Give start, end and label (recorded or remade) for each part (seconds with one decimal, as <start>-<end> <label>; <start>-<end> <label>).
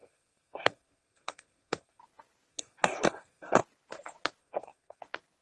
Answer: 0.0-2.0 remade; 2.0-2.5 recorded; 2.5-3.6 remade; 3.6-4.4 recorded; 4.4-5.0 remade; 5.0-5.4 recorded